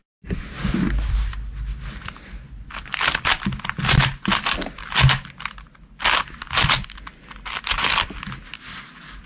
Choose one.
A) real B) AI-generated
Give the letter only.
A